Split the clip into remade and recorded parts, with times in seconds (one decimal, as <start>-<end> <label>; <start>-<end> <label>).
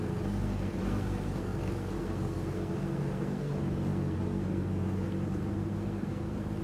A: 0.0-6.6 remade